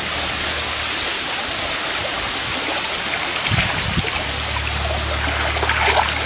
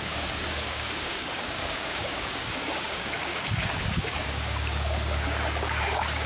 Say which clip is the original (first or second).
first